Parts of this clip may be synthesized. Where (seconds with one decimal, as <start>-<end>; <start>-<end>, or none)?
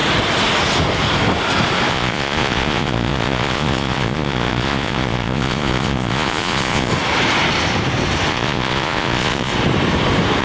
1.9-6.9; 8.3-9.5